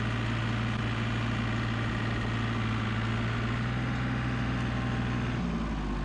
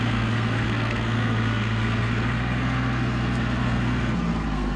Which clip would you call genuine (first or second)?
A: first